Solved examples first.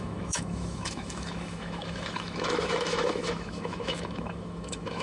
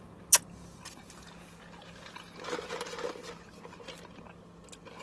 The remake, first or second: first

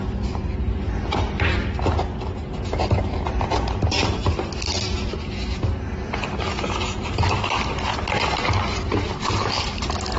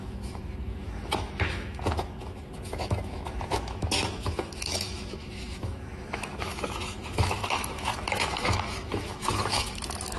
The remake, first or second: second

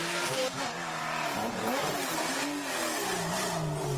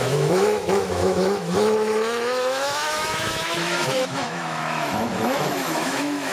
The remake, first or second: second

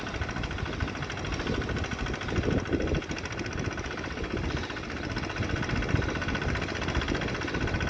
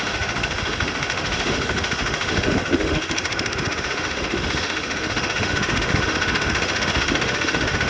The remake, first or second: second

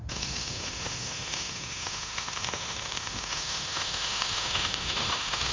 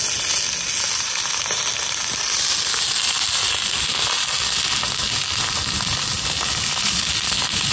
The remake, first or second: first